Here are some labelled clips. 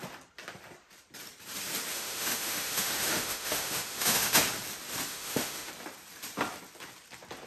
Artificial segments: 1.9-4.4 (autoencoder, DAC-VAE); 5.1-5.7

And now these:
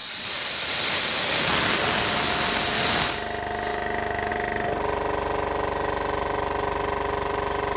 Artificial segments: 3.7-4.3 (autoencoder, DAC-VAE)

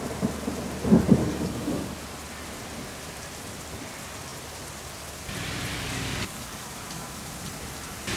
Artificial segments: 1.2-2.0 (codec, DAC); 5.7-7.3